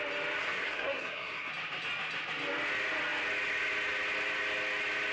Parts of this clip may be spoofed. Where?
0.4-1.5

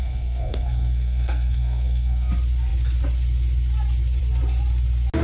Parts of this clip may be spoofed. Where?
0.0-2.3

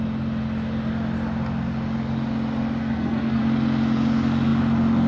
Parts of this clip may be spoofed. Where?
2.8-3.4